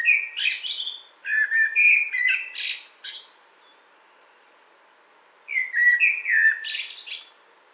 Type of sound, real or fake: real